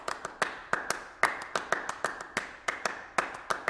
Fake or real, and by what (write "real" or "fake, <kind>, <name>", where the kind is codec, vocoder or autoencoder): real